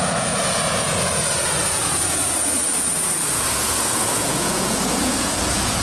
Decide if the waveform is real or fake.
fake